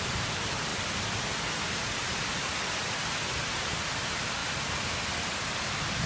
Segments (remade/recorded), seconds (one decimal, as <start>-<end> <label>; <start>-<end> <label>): 0.0-0.7 remade; 0.7-2.8 recorded; 2.8-4.4 remade; 4.4-6.1 recorded